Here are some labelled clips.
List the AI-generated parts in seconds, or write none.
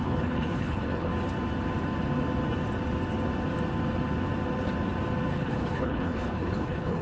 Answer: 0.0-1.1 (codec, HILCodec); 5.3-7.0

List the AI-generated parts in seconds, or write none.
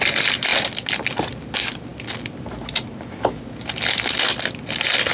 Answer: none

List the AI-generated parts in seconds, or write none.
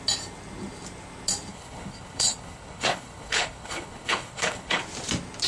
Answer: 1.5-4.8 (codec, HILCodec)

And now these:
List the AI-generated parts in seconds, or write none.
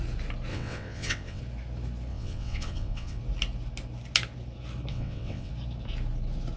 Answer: 0.5-1.4 (vocoder, WaveNeXt); 2.1-3.2; 4.9-5.5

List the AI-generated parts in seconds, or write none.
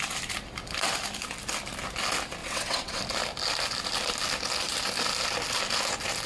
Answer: 2.4-3.0 (vocoder, WaveNeXt)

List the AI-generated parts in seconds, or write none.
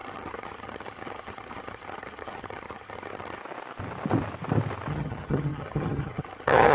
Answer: 0.0-3.4 (vocoder, HiFi-GAN); 4.9-6.7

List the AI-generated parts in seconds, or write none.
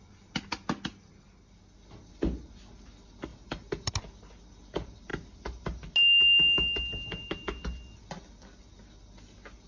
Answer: 3.3-3.9 (vocoder, BigVGAN v2)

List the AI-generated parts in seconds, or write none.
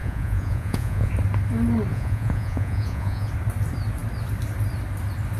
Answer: 0.0-1.1 (vocoder, Vocos); 1.9-3.3